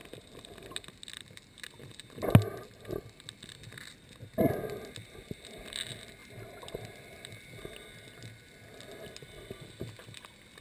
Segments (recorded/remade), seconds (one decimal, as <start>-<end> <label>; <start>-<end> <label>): 0.0-10.6 recorded